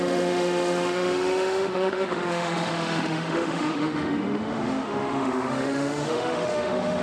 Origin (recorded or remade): remade